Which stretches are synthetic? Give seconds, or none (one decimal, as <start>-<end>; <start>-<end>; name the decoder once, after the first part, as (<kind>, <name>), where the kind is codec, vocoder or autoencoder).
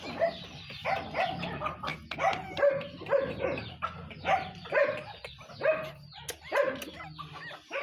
none